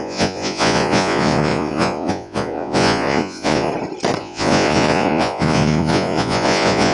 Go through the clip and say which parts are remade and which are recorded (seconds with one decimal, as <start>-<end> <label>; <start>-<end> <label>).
0.0-3.7 remade; 3.7-4.2 recorded; 4.2-6.9 remade